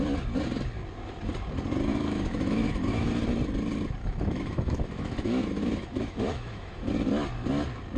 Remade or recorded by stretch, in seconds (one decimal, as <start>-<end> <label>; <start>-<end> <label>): 0.0-1.9 recorded; 1.9-3.1 remade; 3.1-4.0 recorded; 4.0-6.9 remade; 6.9-8.0 recorded